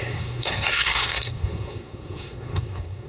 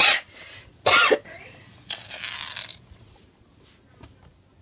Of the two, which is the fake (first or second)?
first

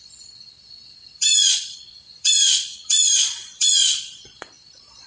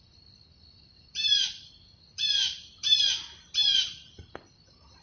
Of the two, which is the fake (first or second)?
first